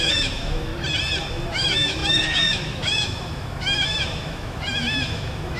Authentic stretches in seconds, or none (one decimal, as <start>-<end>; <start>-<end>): 0.7-1.3